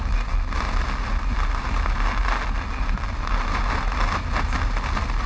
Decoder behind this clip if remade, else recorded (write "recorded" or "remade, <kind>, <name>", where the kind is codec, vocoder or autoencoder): recorded